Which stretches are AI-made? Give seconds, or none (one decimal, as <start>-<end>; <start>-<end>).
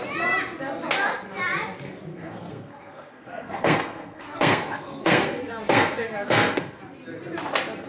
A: 2.1-6.8